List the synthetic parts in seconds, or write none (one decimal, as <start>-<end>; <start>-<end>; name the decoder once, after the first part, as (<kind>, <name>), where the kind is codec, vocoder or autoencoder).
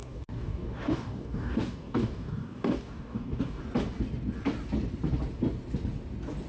0.0-3.6 (codec, DAC)